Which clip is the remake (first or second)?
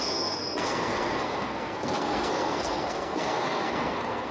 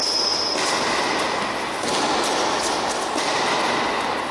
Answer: first